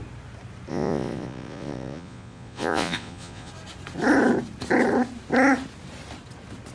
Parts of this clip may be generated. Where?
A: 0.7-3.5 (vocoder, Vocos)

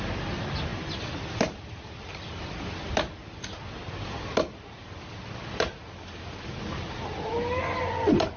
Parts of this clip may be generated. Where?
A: none